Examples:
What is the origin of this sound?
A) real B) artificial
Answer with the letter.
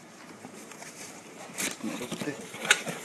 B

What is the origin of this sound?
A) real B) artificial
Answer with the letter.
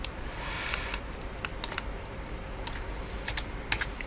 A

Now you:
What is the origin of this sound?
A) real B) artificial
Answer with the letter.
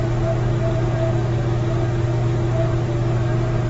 A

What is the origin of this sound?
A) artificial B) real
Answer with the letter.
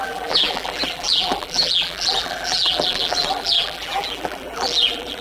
A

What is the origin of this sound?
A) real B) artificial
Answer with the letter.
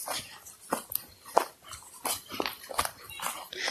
B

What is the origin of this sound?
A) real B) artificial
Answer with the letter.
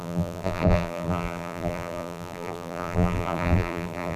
B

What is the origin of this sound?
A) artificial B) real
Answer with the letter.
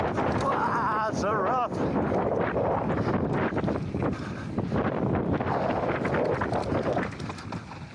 B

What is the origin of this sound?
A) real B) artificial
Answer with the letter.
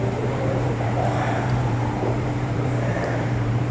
B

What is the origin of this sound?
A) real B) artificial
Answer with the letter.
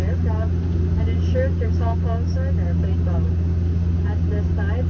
A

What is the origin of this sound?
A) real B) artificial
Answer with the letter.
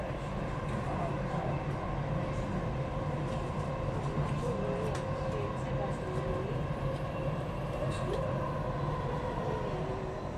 A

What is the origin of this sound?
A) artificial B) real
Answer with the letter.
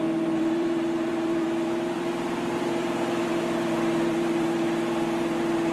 A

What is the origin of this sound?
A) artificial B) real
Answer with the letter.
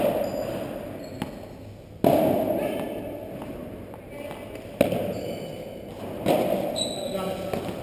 B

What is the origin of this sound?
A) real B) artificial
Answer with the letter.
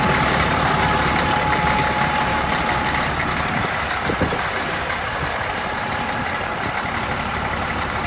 B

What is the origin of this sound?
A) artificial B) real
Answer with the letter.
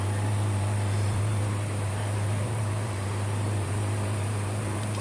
A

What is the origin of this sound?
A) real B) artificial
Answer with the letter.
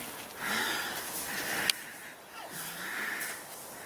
A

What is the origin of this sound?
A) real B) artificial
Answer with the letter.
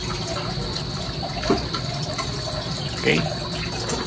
A